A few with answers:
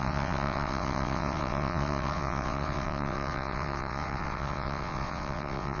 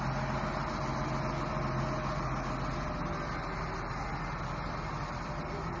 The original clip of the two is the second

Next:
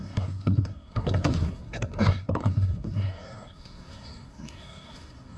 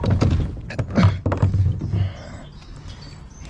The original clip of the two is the second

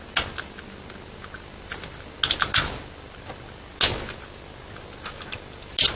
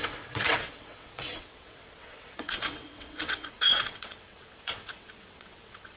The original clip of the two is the first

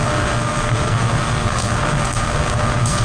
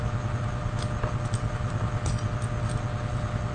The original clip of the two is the second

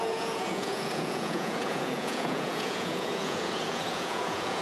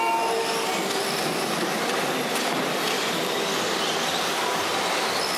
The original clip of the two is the second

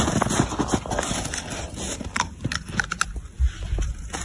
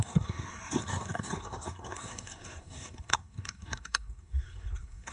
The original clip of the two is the first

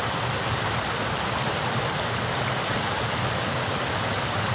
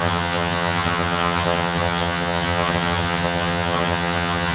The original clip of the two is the first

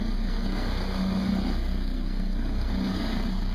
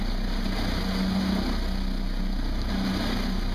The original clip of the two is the second